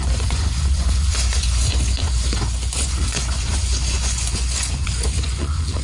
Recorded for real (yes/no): no